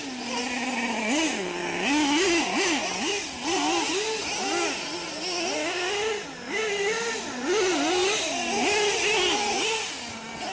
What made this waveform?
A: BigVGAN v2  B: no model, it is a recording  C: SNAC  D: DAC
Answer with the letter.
B